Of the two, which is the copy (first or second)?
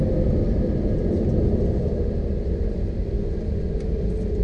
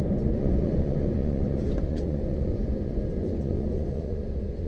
second